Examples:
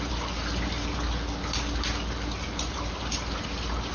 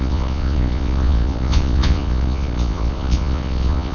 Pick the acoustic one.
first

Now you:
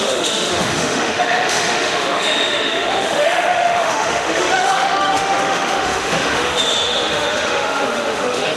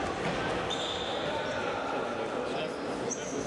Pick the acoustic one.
second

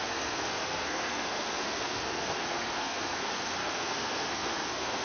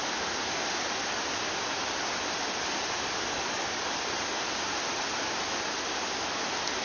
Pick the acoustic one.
second